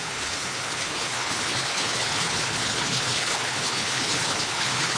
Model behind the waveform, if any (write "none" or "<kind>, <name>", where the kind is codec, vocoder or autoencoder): codec, HILCodec